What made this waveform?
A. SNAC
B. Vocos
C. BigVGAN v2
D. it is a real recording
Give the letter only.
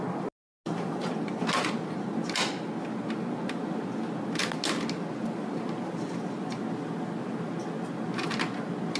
D